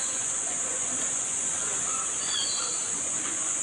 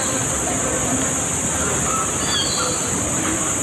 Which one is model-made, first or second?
first